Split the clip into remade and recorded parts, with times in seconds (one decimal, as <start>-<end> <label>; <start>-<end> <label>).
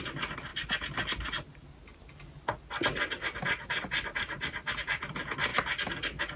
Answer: 0.0-6.4 recorded